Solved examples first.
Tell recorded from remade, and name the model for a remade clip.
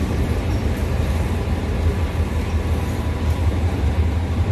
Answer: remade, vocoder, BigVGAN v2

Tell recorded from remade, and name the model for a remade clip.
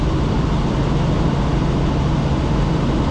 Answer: recorded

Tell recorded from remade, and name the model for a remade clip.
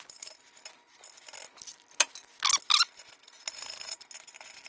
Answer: recorded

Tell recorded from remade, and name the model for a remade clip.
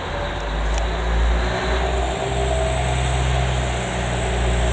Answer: recorded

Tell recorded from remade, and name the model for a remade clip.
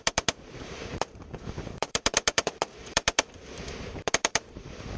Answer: remade, vocoder, BigVGAN v2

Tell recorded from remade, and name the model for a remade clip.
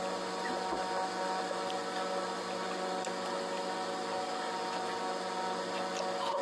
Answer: recorded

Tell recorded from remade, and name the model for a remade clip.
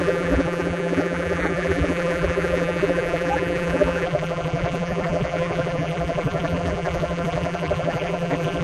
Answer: remade, vocoder, BigVGAN v2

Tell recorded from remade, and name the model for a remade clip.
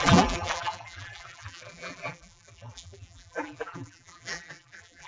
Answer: remade, vocoder, BigVGAN v2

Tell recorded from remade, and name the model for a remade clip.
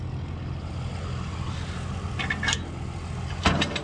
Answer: recorded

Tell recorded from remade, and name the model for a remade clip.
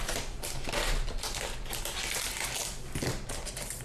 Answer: recorded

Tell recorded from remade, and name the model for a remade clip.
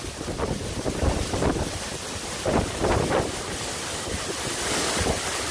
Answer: recorded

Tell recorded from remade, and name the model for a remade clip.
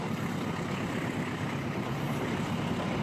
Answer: recorded